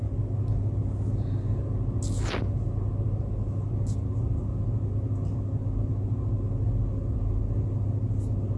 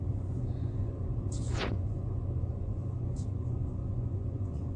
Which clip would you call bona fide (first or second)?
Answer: first